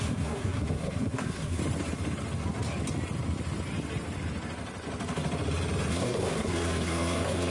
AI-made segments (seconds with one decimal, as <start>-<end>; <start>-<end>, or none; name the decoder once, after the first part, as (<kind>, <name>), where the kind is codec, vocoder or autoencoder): 0.0-1.6 (codec, SNAC); 5.9-7.5